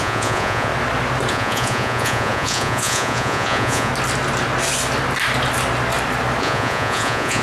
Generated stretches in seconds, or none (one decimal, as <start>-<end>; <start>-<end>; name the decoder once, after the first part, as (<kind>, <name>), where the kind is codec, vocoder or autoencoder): 0.0-0.7 (vocoder, Vocos); 1.3-3.9; 6.4-7.4